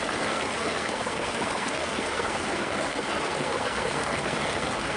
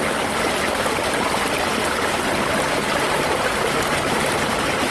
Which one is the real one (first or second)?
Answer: second